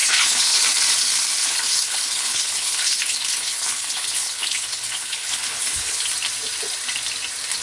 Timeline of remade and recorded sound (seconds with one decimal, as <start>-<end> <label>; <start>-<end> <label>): 0.0-0.6 remade; 0.6-1.4 recorded; 1.4-6.0 remade; 6.0-7.6 recorded